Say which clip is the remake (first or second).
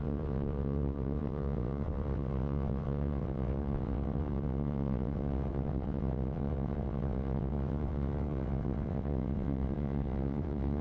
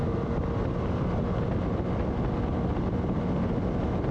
first